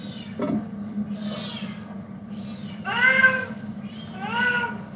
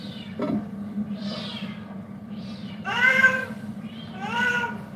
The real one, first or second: first